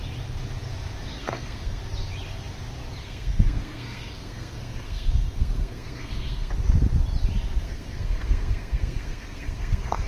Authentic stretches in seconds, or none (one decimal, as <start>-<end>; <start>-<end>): 0.0-1.2; 1.8-3.0; 6.5-7.6